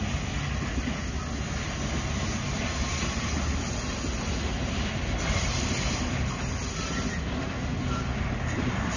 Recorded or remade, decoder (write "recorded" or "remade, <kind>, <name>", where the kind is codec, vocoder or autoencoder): recorded